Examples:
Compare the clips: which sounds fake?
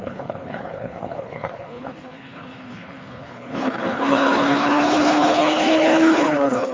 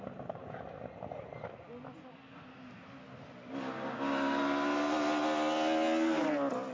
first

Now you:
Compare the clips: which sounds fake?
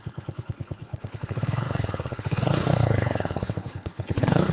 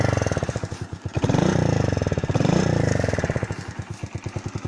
first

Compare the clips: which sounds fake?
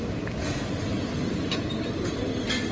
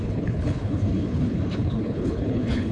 second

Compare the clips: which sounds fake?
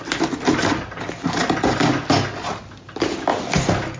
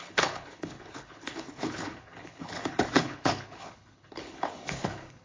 second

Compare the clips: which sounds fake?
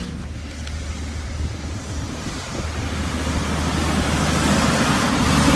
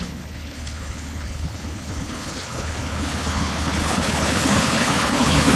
second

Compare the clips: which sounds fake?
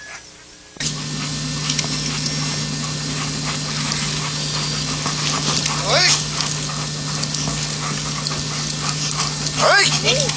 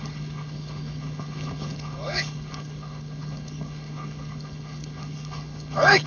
second